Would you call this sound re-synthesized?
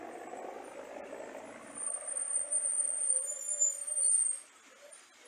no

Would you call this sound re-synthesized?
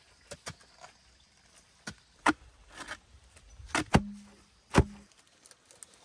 no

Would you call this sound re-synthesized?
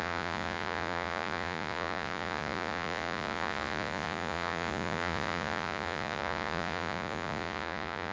yes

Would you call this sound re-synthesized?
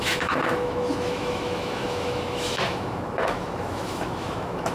yes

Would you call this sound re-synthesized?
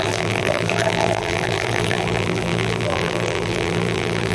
yes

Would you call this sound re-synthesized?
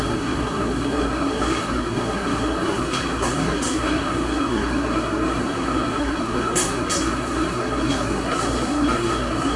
yes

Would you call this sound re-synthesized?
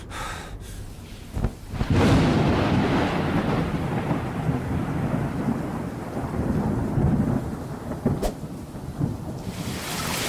no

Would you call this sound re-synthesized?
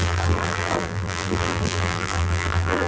yes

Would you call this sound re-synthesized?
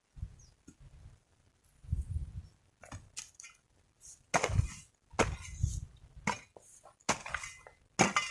no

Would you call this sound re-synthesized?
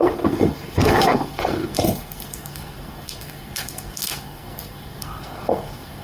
yes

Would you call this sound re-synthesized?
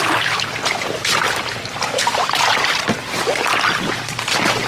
no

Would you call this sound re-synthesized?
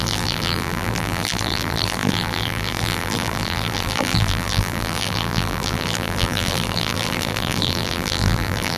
yes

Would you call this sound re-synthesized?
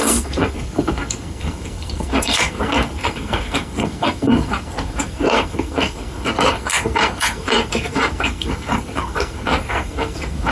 yes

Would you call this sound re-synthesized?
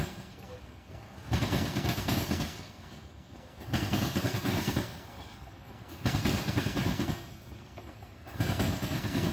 yes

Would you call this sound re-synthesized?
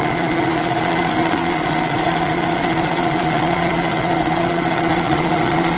yes